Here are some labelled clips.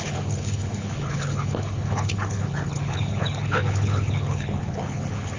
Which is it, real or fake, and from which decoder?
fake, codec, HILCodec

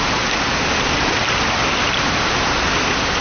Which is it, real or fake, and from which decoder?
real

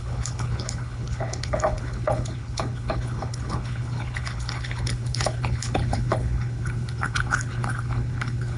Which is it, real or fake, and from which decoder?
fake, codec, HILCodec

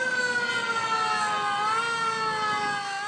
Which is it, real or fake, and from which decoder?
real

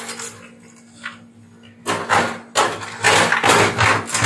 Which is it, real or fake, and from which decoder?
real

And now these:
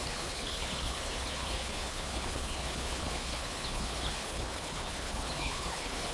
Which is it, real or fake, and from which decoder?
fake, codec, HILCodec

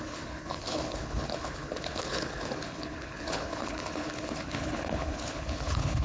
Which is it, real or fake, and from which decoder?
fake, codec, HILCodec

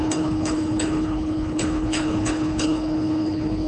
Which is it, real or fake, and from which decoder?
fake, codec, HILCodec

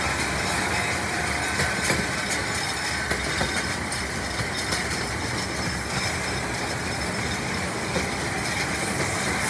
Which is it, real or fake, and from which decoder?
real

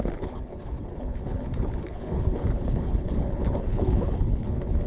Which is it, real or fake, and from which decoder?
fake, codec, HILCodec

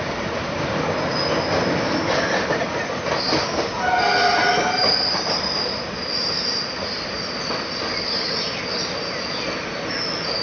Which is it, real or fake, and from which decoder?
real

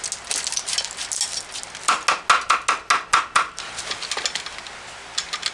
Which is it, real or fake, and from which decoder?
real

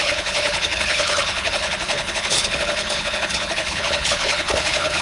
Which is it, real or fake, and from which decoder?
fake, codec, HILCodec